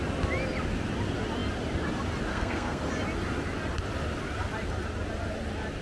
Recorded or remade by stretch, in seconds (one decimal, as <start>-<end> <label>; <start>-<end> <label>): 0.0-2.3 recorded; 2.3-2.8 remade; 2.8-5.8 recorded

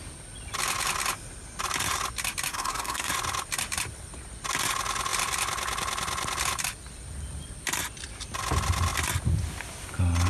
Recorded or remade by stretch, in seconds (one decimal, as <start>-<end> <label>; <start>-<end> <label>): 0.0-2.5 recorded; 2.5-3.1 remade; 3.1-10.3 recorded